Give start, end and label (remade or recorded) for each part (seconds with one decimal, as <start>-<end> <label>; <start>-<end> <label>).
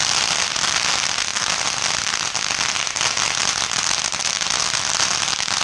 0.0-5.6 recorded